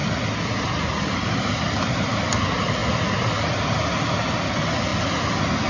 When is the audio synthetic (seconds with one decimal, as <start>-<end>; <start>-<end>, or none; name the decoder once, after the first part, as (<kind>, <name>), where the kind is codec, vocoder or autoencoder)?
none